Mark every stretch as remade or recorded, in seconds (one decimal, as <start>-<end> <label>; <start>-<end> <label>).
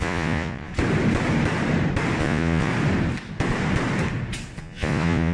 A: 0.0-0.7 remade; 0.7-2.2 recorded; 2.2-2.7 remade; 2.7-4.6 recorded; 4.6-5.3 remade